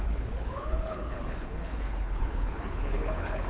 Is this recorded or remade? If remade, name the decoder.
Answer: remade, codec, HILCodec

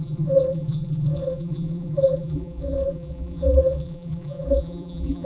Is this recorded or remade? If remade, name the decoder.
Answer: remade, vocoder, BigVGAN v2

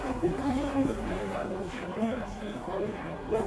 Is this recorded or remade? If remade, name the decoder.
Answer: remade, codec, SNAC